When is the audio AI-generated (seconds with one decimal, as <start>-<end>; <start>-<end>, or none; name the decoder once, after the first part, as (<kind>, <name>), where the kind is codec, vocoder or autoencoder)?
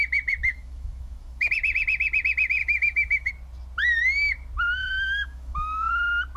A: 0.5-1.5 (autoencoder, DAC-VAE); 2.6-3.3; 4.8-5.9